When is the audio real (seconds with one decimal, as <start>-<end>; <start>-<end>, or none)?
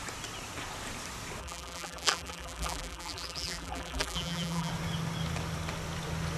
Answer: 0.0-1.4; 4.7-6.4